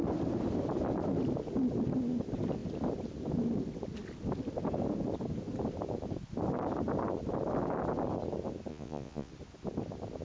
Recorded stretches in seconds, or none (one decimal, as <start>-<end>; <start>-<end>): 0.0-8.7; 9.3-10.2